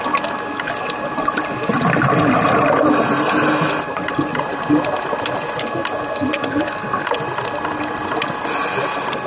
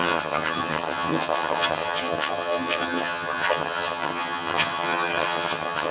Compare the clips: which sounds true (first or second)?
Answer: first